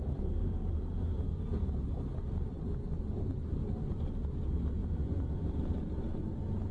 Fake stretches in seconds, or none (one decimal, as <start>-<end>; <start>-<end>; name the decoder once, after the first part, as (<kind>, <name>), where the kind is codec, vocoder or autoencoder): 0.4-1.6 (vocoder, Vocos); 4.8-5.7